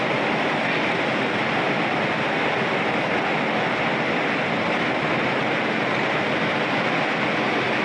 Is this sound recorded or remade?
recorded